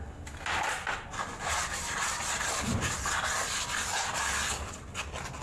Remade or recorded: recorded